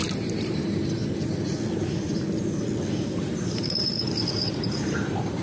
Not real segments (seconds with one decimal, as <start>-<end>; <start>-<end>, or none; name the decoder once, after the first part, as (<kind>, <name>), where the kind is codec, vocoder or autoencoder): 0.5-1.0 (vocoder, BigVGAN v2); 3.0-5.4